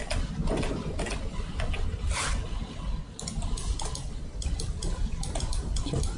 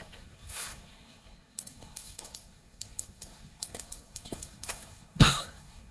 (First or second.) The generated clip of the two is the second